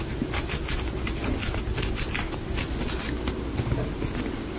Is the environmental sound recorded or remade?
recorded